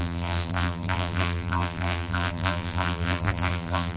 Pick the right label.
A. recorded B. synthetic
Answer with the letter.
B